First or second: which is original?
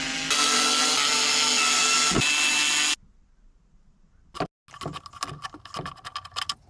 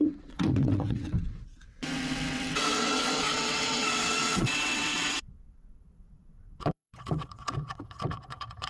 first